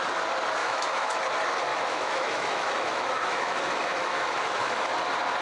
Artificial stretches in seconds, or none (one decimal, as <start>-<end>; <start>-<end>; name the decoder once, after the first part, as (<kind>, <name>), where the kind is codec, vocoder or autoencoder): 0.6-1.2 (autoencoder, DAC-VAE); 1.7-4.9